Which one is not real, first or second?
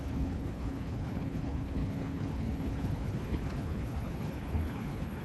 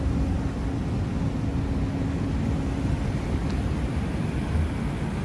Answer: first